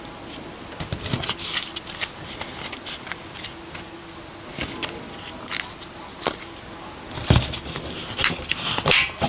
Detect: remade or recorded recorded